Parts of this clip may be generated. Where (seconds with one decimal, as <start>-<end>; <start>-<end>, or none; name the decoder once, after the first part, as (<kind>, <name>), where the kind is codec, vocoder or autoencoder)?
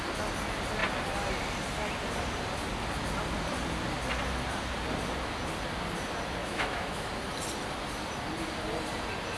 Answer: 6.4-7.1 (autoencoder, DAC-VAE)